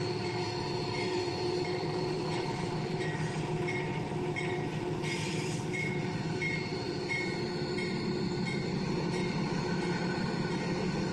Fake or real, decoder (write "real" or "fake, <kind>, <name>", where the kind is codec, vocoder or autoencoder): fake, vocoder, BigVGAN v2